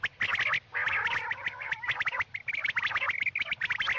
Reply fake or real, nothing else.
real